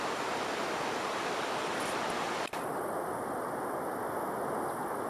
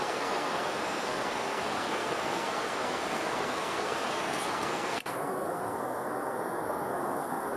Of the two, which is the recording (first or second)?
first